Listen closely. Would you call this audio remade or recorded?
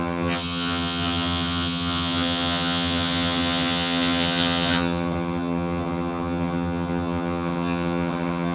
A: remade